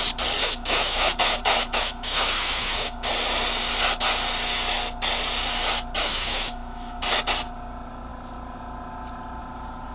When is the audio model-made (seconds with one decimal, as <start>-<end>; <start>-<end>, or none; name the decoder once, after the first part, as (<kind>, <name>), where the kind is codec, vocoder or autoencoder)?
0.4-3.1 (autoencoder, DAC-VAE); 6.0-7.0